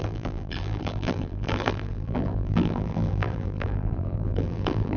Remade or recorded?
remade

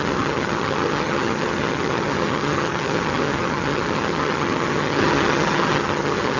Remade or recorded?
remade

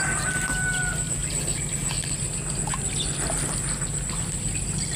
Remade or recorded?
recorded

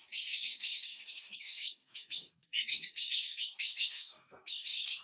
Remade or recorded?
remade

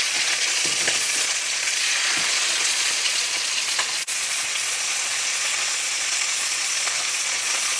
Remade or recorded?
remade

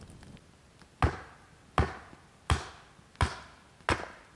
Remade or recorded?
recorded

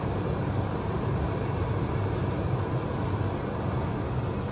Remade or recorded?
remade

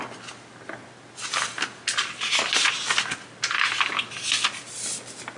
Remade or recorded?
recorded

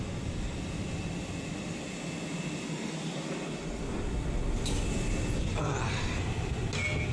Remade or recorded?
recorded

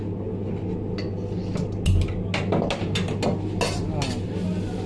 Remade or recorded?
recorded